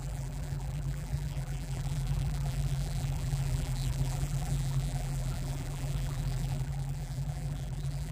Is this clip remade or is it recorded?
remade